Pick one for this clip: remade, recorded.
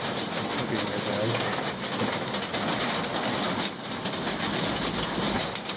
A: recorded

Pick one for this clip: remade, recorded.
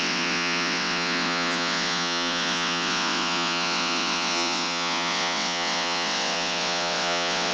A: remade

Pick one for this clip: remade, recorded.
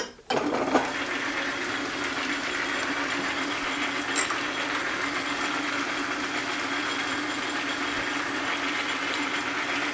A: recorded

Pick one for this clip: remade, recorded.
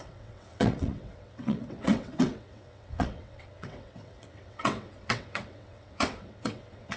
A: remade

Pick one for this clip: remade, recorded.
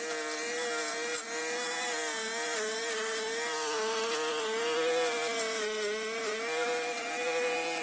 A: recorded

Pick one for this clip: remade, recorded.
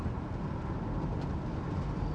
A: recorded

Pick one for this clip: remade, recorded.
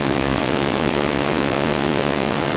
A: remade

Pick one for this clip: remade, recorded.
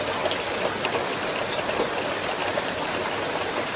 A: recorded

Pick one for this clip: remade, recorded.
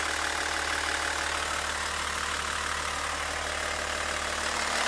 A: recorded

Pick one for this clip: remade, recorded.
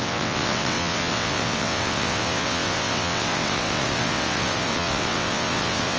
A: remade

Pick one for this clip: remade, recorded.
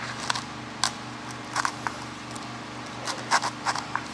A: recorded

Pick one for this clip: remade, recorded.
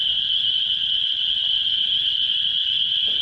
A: recorded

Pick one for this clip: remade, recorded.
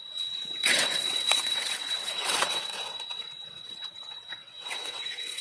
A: remade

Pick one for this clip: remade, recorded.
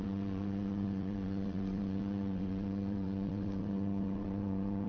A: remade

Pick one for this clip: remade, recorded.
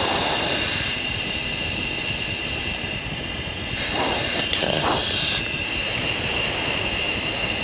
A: recorded